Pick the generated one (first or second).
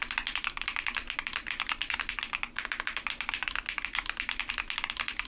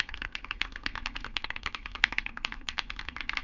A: second